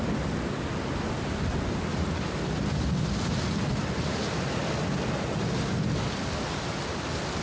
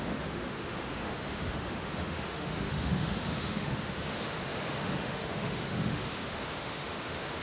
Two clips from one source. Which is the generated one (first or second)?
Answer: second